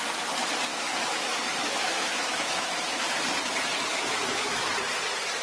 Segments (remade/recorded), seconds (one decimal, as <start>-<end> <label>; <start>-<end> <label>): 0.0-0.7 recorded; 0.7-3.2 remade; 3.2-3.9 recorded; 3.9-4.7 remade; 4.7-5.4 recorded